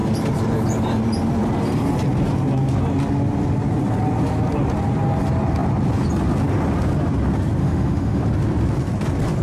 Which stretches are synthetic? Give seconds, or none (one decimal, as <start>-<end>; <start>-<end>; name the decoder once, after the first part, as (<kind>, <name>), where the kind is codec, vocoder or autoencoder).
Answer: 7.6-8.2 (autoencoder, DAC-VAE)